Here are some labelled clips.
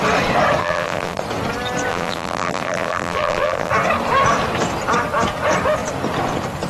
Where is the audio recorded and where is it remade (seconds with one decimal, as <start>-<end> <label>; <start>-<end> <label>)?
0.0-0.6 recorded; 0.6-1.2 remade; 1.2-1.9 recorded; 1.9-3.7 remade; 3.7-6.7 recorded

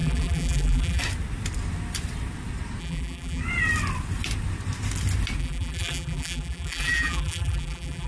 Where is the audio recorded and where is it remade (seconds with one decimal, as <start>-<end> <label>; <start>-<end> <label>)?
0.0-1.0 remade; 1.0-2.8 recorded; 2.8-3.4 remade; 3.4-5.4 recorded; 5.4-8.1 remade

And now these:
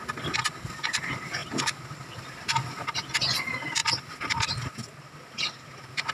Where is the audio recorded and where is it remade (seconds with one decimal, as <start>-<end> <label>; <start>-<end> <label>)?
0.0-6.1 recorded

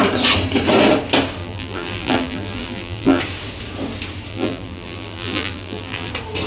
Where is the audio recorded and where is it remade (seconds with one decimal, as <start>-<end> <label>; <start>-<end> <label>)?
0.0-1.4 recorded; 1.4-3.2 remade; 3.2-4.3 recorded; 4.3-6.1 remade; 6.1-6.5 recorded

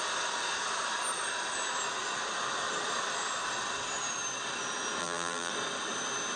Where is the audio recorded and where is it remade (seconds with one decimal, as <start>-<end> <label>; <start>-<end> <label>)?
0.0-5.0 recorded; 5.0-5.5 remade; 5.5-6.4 recorded

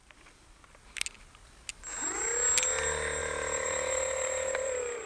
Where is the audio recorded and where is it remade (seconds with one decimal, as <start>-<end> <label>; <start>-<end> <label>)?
0.0-3.2 recorded; 3.2-5.1 remade

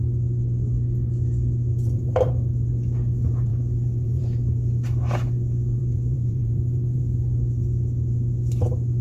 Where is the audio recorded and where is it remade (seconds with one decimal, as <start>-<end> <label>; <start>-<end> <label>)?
0.0-1.7 recorded; 1.7-2.3 remade; 2.3-3.5 recorded; 3.5-4.2 remade; 4.2-5.8 recorded; 5.8-7.0 remade; 7.0-9.0 recorded

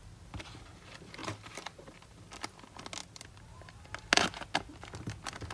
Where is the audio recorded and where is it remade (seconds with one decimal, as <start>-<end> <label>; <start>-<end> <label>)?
0.0-1.2 recorded; 1.2-2.2 remade; 2.2-5.5 recorded